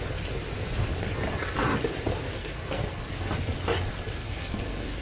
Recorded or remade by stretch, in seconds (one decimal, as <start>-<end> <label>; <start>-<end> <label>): 0.0-2.4 recorded; 2.4-3.3 remade; 3.3-4.2 recorded; 4.2-5.0 remade